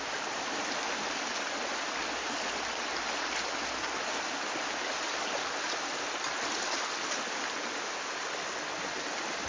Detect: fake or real real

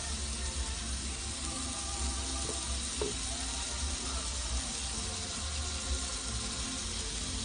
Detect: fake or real real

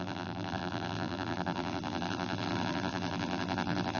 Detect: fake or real fake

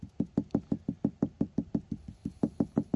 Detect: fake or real fake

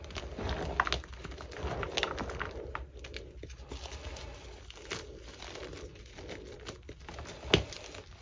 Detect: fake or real real